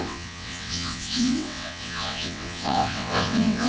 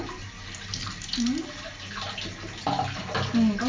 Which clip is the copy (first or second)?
first